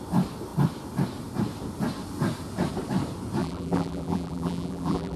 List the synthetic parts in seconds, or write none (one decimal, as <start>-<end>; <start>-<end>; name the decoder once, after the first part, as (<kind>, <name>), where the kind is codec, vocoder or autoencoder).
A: 3.4-5.2 (vocoder, BigVGAN v2)